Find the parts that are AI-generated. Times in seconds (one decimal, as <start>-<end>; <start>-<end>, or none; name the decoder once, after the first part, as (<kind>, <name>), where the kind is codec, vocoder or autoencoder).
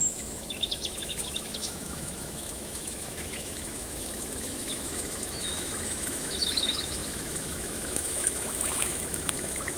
0.0-9.8 (autoencoder, DAC-VAE)